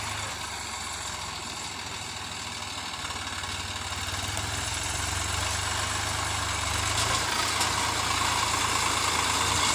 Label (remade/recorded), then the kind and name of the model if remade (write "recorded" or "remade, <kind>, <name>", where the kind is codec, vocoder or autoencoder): recorded